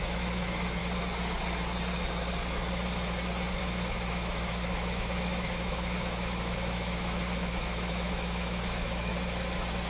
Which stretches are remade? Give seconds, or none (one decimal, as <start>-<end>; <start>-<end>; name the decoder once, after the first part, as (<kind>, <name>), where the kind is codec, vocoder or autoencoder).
0.0-0.8 (autoencoder, DAC-VAE); 3.6-9.1